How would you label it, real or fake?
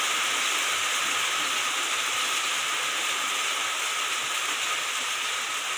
real